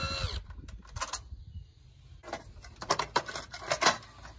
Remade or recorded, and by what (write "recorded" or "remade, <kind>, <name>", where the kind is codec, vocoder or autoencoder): recorded